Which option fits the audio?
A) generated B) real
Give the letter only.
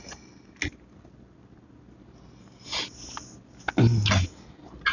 B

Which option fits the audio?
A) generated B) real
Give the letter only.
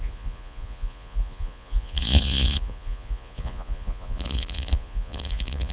A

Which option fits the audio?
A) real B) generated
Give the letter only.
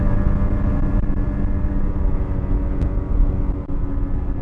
A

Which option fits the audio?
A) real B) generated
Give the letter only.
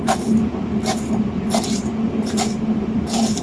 B